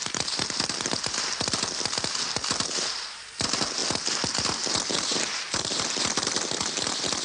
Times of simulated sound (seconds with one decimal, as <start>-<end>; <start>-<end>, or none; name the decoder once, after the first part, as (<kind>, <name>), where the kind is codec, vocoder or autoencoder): none